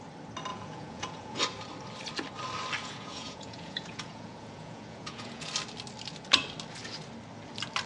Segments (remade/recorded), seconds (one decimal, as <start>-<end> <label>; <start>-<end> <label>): 0.0-0.5 recorded; 0.5-1.4 remade; 1.4-2.8 recorded; 2.8-5.5 remade; 5.5-7.9 recorded